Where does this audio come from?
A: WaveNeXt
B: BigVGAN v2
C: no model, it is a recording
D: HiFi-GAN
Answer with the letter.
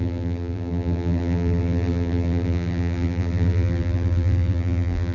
B